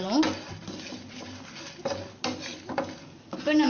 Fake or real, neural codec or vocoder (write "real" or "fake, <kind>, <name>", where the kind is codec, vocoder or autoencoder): real